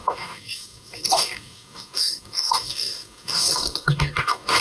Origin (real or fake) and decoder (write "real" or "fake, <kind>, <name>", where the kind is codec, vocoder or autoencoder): fake, codec, DAC